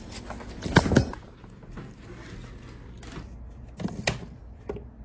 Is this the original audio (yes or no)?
yes